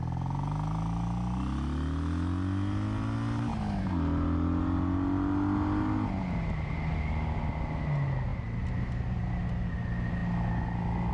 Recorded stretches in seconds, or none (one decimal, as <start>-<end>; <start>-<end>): 0.0-11.1